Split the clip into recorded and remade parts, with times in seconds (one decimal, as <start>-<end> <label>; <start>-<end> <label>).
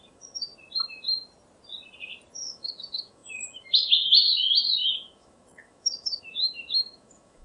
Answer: 0.0-0.5 remade; 0.5-2.3 recorded; 2.3-7.4 remade